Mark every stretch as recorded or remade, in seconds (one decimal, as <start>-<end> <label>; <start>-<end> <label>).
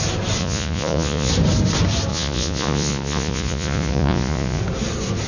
0.0-0.4 recorded; 0.4-1.3 remade; 1.3-2.1 recorded; 2.1-4.6 remade; 4.6-5.3 recorded